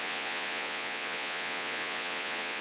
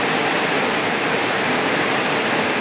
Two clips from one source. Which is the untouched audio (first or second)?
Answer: second